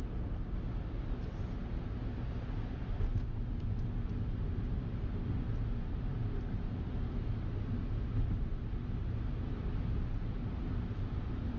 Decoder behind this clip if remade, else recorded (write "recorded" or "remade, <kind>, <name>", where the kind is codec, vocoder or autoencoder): recorded